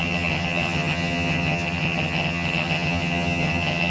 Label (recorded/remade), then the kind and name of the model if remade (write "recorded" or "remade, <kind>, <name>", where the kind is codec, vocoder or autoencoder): remade, vocoder, HiFi-GAN